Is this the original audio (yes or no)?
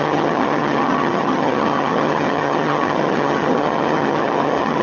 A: no